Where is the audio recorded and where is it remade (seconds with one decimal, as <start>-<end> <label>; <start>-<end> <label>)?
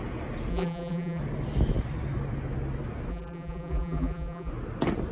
0.0-0.5 recorded; 0.5-1.2 remade; 1.2-3.1 recorded; 3.1-4.5 remade; 4.5-5.1 recorded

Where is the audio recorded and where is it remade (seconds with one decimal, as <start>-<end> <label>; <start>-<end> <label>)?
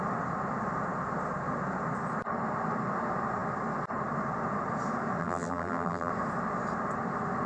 0.0-5.2 recorded; 5.2-6.1 remade; 6.1-7.5 recorded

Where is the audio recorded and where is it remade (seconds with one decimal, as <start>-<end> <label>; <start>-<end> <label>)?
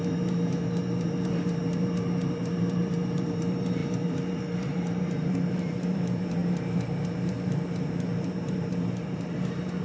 0.0-9.8 remade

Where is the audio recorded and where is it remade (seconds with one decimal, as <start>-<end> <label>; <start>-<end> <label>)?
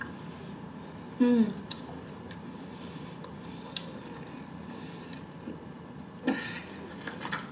0.0-0.4 remade; 0.4-1.7 recorded; 1.7-3.3 remade; 3.3-6.9 recorded; 6.9-7.5 remade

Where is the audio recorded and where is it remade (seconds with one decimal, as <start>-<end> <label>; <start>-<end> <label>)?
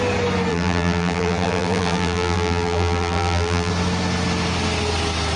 0.0-0.5 recorded; 0.5-3.7 remade; 3.7-5.4 recorded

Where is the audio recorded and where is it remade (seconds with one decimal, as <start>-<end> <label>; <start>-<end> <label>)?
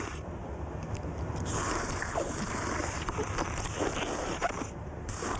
0.0-0.4 remade; 0.4-1.3 recorded; 1.3-2.8 remade; 2.8-4.2 recorded; 4.2-5.4 remade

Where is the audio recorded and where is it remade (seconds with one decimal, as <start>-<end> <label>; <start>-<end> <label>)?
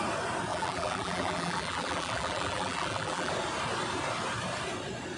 0.0-0.5 recorded; 0.5-3.3 remade; 3.3-5.2 recorded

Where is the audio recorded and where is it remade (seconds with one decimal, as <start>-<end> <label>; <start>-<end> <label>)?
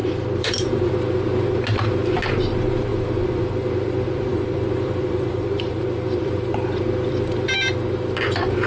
0.0-0.9 remade; 0.9-2.9 recorded; 2.9-7.5 remade; 7.5-8.7 recorded